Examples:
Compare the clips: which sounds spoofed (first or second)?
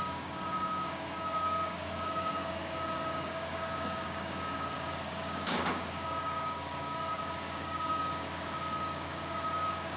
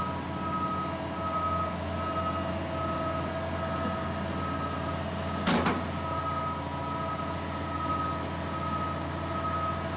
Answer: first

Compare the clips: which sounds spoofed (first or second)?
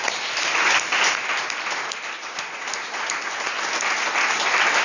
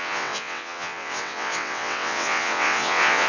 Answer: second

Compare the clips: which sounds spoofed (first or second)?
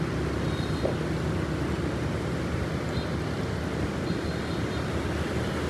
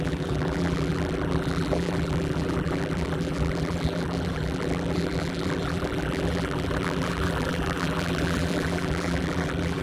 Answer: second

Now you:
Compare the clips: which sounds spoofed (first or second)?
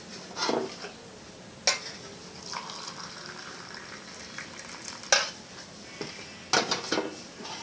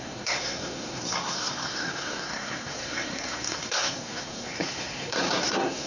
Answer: second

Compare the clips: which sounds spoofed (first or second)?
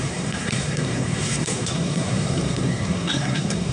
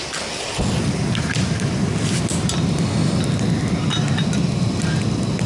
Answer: first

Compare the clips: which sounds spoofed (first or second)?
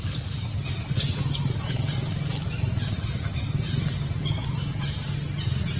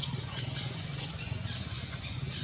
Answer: second